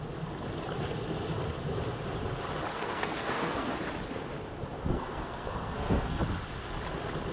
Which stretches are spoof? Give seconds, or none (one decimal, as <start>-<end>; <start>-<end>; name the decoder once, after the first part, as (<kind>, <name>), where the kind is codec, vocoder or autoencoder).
2.7-3.7 (codec, SNAC); 4.9-6.2